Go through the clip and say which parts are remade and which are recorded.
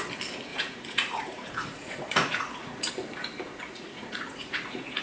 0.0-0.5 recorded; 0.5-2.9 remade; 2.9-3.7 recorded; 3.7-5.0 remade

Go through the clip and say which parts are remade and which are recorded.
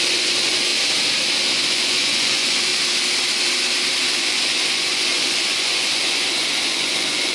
0.0-0.7 remade; 0.7-1.5 recorded; 1.5-2.7 remade; 2.7-4.2 recorded; 4.2-7.3 remade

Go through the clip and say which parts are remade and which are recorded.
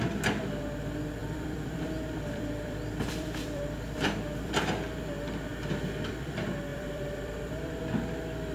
0.0-1.2 recorded; 1.2-4.6 remade; 4.6-6.7 recorded; 6.7-7.8 remade; 7.8-8.5 recorded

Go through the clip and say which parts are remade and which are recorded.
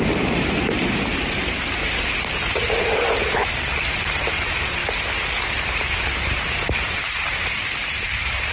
0.0-4.8 remade; 4.8-5.5 recorded; 5.5-8.5 remade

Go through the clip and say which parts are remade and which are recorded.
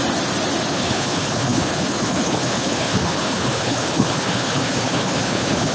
0.0-0.7 recorded; 0.7-5.7 remade